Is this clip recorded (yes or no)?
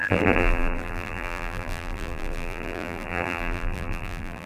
no